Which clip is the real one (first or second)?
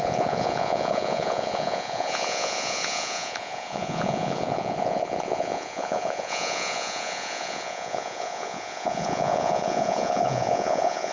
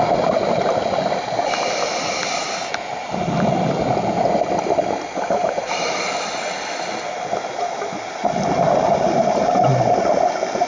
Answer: second